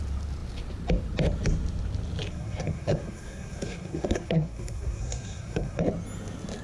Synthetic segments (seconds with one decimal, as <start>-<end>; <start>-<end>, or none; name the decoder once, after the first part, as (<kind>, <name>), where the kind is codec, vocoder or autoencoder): 2.3-5.8 (codec, SNAC)